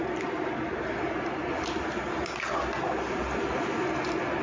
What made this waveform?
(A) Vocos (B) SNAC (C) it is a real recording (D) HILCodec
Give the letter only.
C